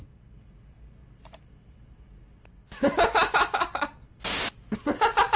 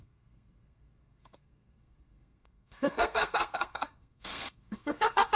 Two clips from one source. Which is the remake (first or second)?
second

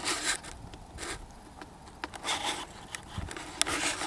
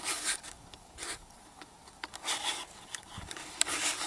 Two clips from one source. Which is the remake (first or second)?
second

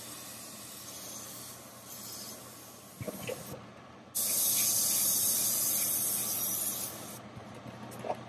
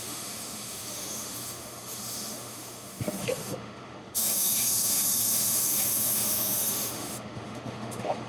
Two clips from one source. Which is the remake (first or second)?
second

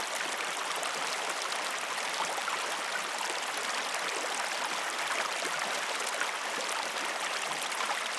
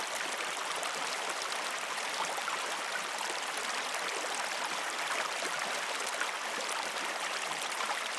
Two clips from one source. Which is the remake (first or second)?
second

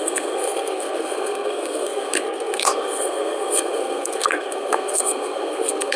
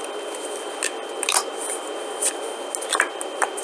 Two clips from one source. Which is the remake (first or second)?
first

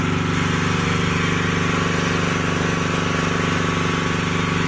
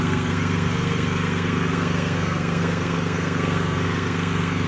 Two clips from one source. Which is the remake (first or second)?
second